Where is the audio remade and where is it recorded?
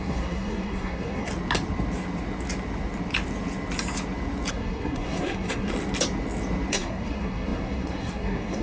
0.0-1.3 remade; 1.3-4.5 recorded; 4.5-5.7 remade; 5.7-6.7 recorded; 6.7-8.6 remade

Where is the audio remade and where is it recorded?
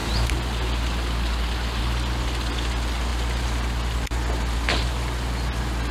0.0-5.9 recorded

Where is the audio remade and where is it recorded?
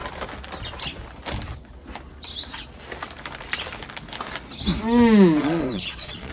0.0-5.4 recorded; 5.4-6.3 remade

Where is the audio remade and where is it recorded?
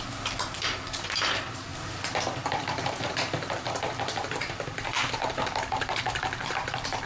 0.0-1.7 remade; 1.7-2.6 recorded; 2.6-7.1 remade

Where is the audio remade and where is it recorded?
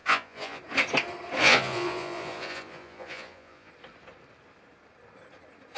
0.0-0.6 remade; 0.6-1.4 recorded; 1.4-3.7 remade; 3.7-5.8 recorded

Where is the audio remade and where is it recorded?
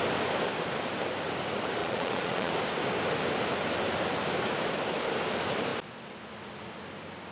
0.0-1.8 recorded; 1.8-2.5 remade; 2.5-7.3 recorded